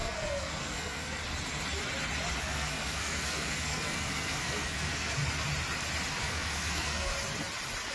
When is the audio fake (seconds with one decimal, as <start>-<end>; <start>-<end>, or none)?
0.0-1.2; 2.4-5.2; 6.2-7.1